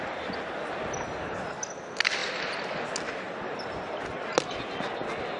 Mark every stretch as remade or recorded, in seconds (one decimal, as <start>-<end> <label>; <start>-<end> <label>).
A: 0.0-5.4 recorded